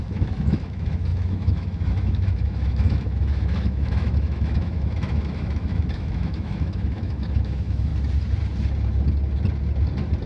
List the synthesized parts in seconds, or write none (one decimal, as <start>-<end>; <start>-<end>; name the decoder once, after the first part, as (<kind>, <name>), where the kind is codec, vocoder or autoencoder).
0.0-7.9 (autoencoder, DAC-VAE)